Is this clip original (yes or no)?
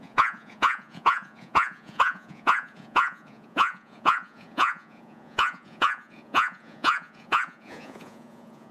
no